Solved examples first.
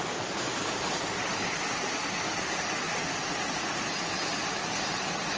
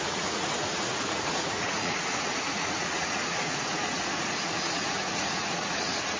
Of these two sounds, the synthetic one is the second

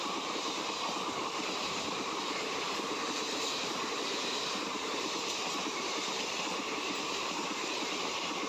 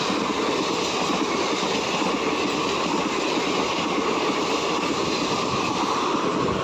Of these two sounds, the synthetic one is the first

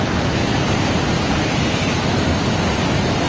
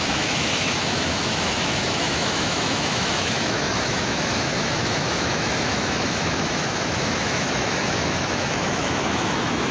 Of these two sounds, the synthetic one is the second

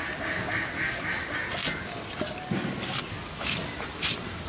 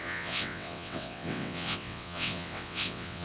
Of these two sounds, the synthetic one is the second